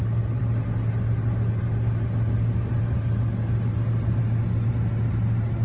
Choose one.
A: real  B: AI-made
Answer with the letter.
A